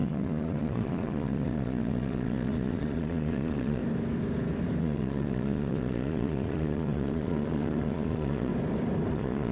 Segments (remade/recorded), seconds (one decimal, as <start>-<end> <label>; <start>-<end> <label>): 0.0-3.8 remade; 3.8-4.8 recorded; 4.8-8.5 remade; 8.5-9.1 recorded; 9.1-9.5 remade